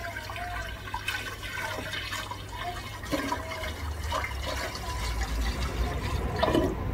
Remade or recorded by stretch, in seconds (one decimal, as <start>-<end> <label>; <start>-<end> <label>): 0.0-6.9 recorded